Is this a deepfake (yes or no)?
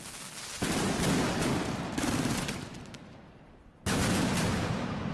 yes